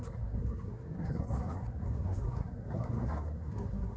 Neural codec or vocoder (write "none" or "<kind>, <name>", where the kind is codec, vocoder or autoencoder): codec, SNAC